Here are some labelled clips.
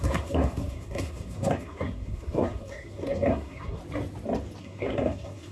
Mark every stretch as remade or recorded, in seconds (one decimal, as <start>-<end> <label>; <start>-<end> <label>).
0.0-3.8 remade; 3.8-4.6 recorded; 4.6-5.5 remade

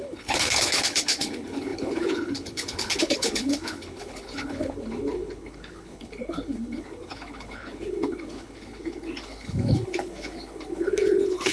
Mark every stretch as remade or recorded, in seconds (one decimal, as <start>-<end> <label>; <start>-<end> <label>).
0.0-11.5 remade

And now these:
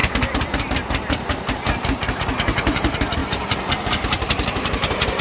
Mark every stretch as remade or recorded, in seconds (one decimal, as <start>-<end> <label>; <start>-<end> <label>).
0.0-3.2 recorded; 3.2-5.2 remade